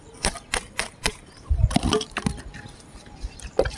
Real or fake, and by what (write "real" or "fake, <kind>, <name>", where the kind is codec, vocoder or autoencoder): real